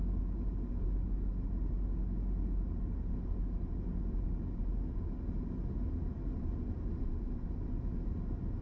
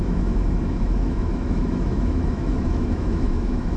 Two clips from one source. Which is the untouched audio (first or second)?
first